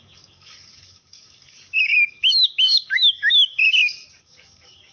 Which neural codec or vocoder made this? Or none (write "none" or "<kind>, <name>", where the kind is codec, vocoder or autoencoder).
codec, DAC